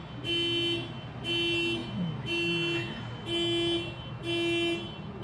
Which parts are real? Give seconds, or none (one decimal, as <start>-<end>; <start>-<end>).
0.0-5.2